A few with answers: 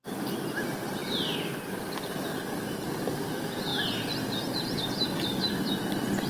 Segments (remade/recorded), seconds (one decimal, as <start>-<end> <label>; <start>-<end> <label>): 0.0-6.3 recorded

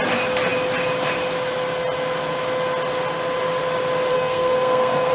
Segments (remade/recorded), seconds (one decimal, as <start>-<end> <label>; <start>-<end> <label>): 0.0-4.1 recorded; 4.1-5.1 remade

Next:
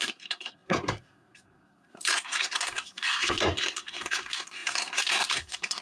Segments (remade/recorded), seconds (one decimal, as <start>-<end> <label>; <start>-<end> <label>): 0.0-5.8 remade